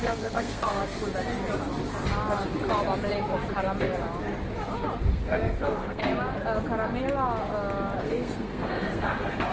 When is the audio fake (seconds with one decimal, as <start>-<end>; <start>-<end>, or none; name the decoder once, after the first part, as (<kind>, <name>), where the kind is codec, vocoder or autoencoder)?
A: 0.0-0.8 (codec, SNAC); 5.1-6.0; 8.0-9.5